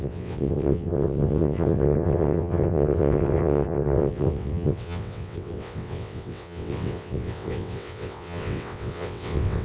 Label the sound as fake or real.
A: fake